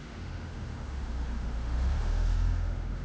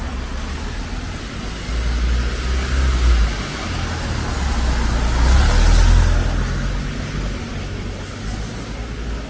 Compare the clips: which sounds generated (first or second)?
first